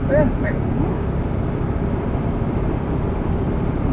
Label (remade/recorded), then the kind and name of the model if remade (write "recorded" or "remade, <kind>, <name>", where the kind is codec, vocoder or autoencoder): recorded